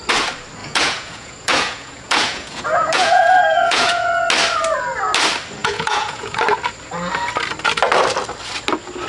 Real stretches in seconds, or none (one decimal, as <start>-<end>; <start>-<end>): 0.0-0.6; 4.1-5.6; 6.4-9.1